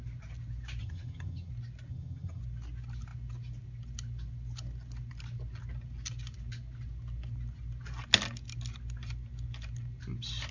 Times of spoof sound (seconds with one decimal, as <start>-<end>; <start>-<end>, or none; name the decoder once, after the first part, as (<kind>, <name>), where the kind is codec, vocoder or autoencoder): 0.8-1.5 (vocoder, HiFi-GAN); 1.9-2.4